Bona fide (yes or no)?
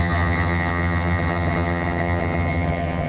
no